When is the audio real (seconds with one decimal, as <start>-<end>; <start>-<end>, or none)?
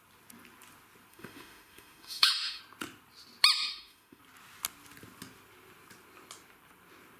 0.0-1.1; 2.6-3.7; 4.2-7.2